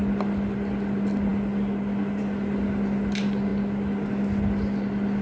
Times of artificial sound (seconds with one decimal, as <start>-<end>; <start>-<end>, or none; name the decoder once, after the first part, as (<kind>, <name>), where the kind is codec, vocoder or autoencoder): none